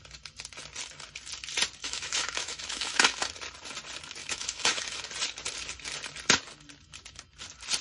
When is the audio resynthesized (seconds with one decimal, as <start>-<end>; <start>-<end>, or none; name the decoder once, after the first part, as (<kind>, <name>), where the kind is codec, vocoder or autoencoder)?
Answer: 1.8-3.3 (autoencoder, DAC-VAE); 4.2-5.1